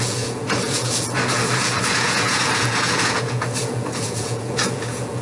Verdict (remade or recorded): remade